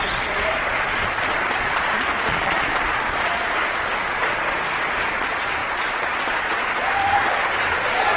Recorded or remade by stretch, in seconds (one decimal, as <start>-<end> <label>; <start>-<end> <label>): 0.0-8.2 remade